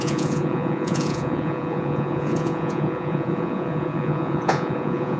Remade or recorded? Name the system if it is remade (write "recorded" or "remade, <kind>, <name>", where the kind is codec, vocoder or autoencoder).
remade, vocoder, Vocos